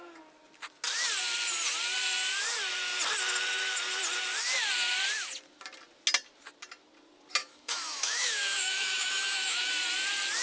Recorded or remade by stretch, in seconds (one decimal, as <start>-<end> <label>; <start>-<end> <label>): 0.0-7.4 recorded; 7.4-9.7 remade; 9.7-10.4 recorded